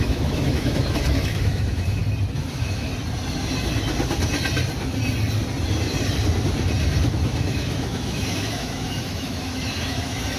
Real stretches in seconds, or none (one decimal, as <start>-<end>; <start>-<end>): 2.0-2.5; 2.9-7.1

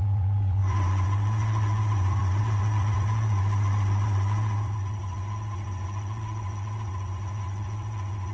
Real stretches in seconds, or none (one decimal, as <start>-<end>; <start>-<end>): none

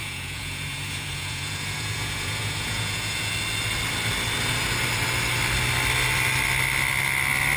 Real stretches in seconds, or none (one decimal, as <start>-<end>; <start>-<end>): 3.3-7.6

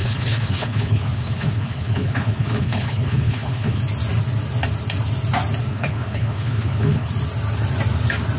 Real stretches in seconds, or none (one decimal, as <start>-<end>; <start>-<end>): 3.8-5.7; 7.1-8.4

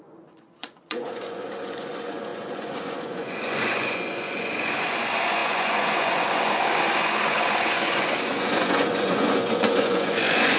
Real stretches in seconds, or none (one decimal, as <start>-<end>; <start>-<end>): none

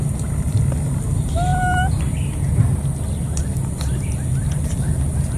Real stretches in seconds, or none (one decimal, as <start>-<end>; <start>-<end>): 0.0-5.4

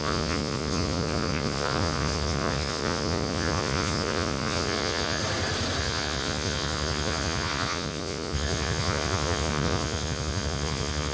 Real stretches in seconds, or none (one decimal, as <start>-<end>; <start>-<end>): 5.2-5.8